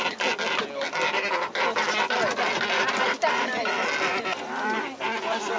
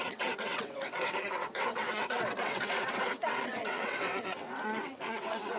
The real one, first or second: first